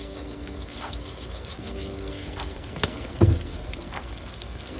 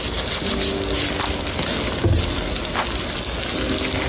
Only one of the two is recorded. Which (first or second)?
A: second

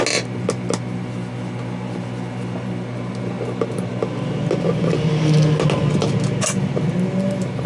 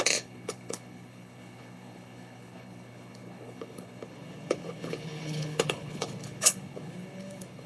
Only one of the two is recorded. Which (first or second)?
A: first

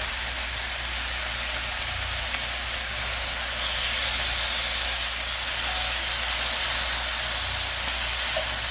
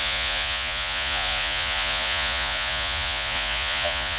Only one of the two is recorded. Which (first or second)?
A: first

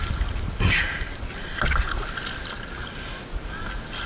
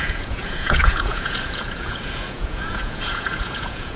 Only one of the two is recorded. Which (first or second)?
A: first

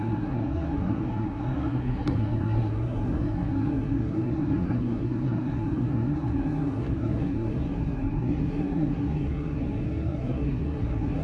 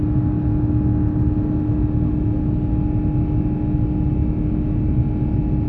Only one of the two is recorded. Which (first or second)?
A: second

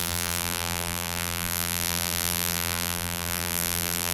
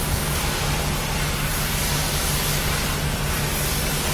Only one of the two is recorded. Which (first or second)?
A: second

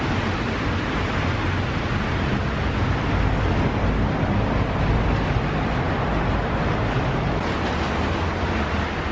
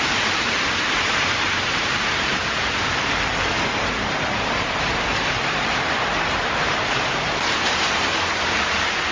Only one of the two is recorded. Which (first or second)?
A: first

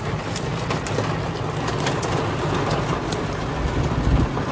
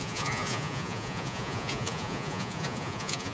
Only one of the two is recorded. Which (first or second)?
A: first